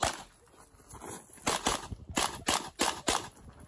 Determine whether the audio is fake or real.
real